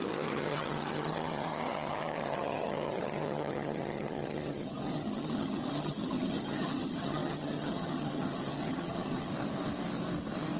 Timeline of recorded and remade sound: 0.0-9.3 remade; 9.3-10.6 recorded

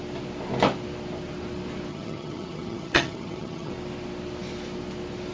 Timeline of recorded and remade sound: 0.0-1.9 recorded; 1.9-3.7 remade; 3.7-5.3 recorded

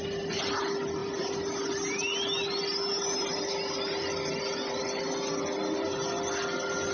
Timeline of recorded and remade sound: 0.0-6.9 recorded

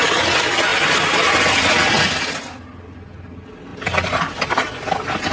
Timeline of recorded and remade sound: 0.0-5.3 recorded

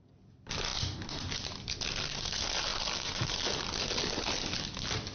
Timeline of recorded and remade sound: 0.0-5.1 recorded

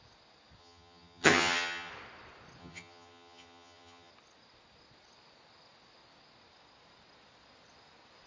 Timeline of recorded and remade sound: 0.0-0.6 recorded; 0.6-1.9 remade; 1.9-2.6 recorded; 2.6-4.1 remade; 4.1-8.3 recorded

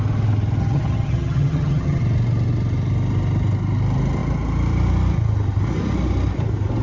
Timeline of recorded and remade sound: 0.0-0.6 recorded; 0.6-2.0 remade; 2.0-6.8 recorded